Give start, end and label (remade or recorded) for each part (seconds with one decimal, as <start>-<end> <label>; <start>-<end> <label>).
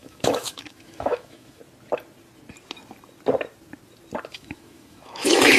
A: 0.0-1.6 remade; 1.6-4.3 recorded; 4.3-5.6 remade